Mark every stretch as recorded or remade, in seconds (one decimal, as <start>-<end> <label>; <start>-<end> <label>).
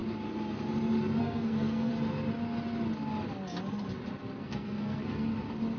0.0-1.2 recorded; 1.2-1.9 remade; 1.9-4.4 recorded; 4.4-5.3 remade; 5.3-5.8 recorded